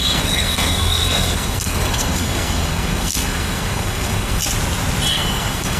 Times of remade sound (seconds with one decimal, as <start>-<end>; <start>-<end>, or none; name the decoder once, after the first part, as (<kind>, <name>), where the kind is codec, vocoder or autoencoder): 0.0-4.4 (codec, SNAC); 5.1-5.8